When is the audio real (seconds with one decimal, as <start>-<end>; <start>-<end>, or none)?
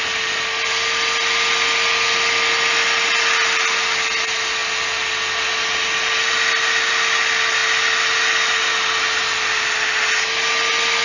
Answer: 0.0-11.0